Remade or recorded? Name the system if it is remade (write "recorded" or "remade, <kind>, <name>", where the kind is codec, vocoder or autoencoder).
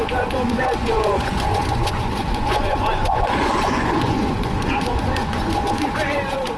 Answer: remade, vocoder, Vocos